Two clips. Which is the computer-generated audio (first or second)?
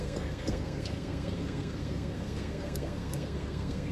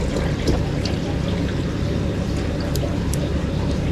first